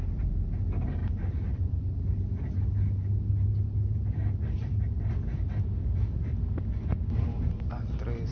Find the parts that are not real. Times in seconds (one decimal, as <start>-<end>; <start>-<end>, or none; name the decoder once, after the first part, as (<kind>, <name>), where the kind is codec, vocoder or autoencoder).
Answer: none